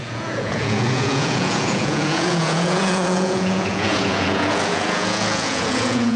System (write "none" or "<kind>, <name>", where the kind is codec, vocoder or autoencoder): vocoder, Vocos